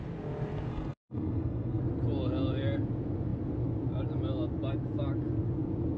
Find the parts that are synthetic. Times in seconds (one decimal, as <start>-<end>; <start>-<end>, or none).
0.7-1.8